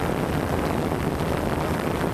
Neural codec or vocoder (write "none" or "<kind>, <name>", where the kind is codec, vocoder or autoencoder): vocoder, BigVGAN v2